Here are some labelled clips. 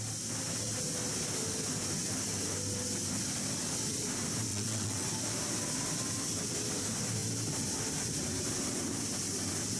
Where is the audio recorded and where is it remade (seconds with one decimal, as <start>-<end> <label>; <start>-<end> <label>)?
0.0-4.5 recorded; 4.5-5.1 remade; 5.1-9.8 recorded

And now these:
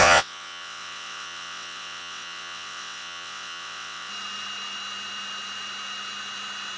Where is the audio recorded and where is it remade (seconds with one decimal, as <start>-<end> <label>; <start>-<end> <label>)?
0.0-4.1 remade; 4.1-6.8 recorded

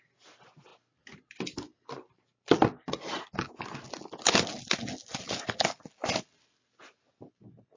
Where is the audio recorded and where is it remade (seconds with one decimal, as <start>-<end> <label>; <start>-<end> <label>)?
0.0-7.8 recorded

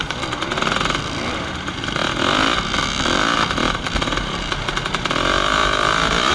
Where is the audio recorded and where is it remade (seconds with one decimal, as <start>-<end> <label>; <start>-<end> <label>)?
0.0-6.3 recorded

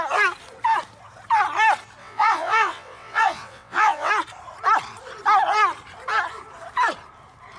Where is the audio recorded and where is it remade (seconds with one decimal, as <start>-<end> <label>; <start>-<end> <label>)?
0.0-2.0 recorded; 2.0-4.1 remade; 4.1-7.6 recorded

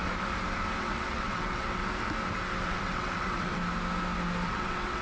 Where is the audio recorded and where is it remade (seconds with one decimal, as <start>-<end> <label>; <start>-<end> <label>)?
0.0-0.8 recorded; 0.8-1.8 remade; 1.8-2.6 recorded; 2.6-3.6 remade; 3.6-4.4 recorded; 4.4-5.0 remade

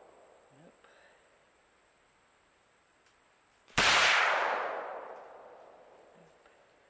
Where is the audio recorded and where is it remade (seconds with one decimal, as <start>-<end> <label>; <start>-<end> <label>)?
0.0-6.9 recorded

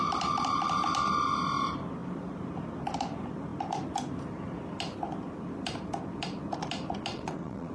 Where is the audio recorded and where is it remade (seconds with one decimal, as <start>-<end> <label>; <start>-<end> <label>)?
0.0-7.1 recorded; 7.1-7.7 remade